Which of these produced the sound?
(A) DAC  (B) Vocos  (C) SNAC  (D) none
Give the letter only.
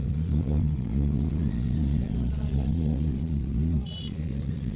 B